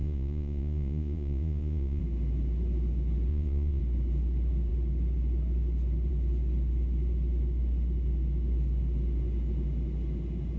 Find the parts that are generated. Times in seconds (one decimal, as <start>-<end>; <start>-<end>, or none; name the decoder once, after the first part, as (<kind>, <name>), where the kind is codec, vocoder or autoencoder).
0.0-2.0 (vocoder, Vocos); 3.3-3.8